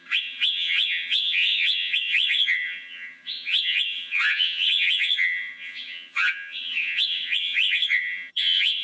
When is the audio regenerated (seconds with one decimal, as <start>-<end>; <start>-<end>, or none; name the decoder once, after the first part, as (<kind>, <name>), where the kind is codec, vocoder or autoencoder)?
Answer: 0.0-8.8 (vocoder, HiFi-GAN)